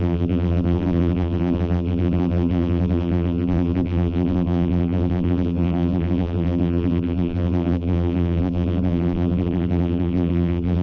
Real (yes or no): no